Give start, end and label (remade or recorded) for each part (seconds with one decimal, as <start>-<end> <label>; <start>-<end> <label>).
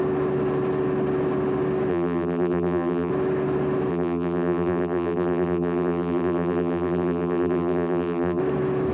0.0-1.9 recorded; 1.9-3.1 remade; 3.1-3.9 recorded; 3.9-8.4 remade; 8.4-8.9 recorded